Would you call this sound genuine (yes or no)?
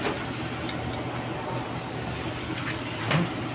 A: yes